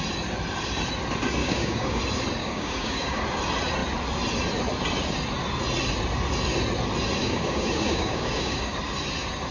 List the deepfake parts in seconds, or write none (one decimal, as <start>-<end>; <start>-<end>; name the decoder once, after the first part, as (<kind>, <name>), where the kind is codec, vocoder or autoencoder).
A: 1.4-2.0 (codec, DAC); 2.4-3.2; 7.2-8.7